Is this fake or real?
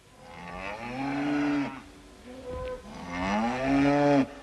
real